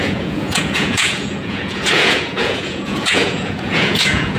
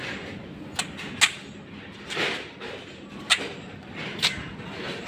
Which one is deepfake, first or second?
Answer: first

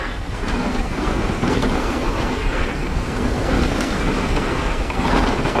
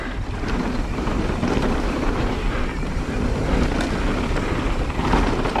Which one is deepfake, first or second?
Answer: first